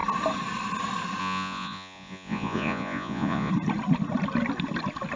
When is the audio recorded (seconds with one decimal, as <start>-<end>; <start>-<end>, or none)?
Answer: 0.0-1.2; 3.5-5.2